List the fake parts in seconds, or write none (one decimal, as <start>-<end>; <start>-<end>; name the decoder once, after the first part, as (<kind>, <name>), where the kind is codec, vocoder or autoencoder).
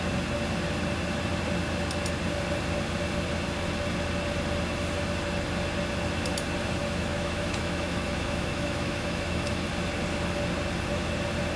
6.8-9.7 (autoencoder, DAC-VAE)